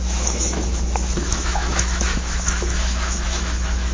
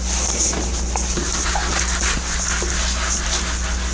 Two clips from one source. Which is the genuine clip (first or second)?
second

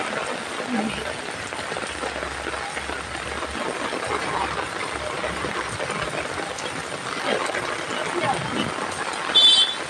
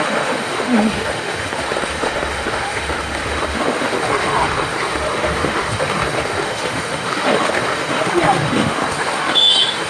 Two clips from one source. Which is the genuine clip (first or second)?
first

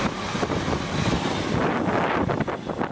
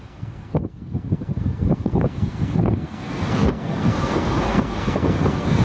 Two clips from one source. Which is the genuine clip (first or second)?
first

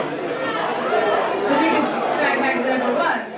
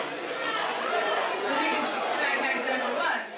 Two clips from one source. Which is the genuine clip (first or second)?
first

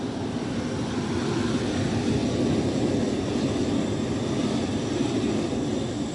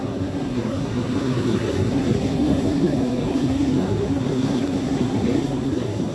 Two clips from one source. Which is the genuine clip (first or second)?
first